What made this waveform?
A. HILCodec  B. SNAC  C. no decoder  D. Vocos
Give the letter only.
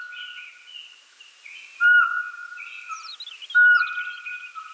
C